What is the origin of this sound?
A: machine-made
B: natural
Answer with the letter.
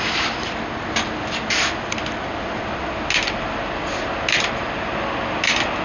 B